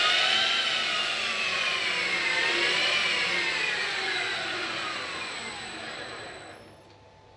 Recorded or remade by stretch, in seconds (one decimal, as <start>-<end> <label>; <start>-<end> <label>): 0.0-1.0 recorded; 1.0-1.8 remade; 1.8-3.8 recorded; 3.8-5.3 remade; 5.3-7.4 recorded